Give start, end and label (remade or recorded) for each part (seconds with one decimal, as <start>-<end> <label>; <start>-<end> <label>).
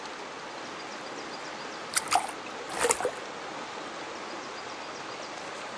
0.0-5.8 recorded